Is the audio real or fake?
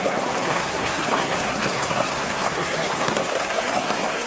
fake